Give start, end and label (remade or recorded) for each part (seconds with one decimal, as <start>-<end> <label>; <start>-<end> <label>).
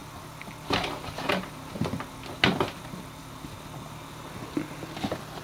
0.0-5.4 recorded